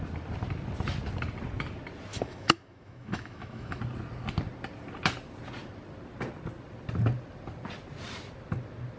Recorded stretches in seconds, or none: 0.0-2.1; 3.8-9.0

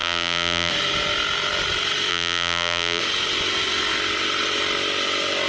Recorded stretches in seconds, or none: 0.7-2.1; 3.0-5.5

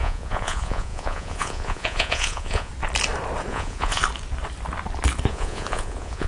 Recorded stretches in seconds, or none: 2.7-3.5; 4.0-5.3